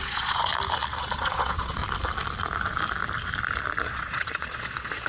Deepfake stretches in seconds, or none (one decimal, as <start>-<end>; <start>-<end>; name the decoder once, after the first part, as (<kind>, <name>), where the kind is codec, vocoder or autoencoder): 0.0-0.5 (vocoder, Vocos); 1.0-1.8; 3.8-5.1